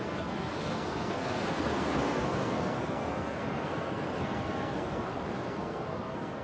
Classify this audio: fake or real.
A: fake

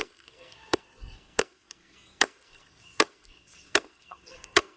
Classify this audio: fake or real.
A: fake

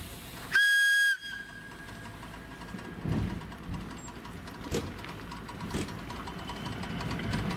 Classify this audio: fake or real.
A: real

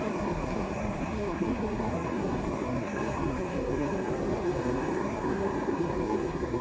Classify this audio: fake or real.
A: fake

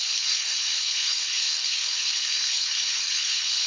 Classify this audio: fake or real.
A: fake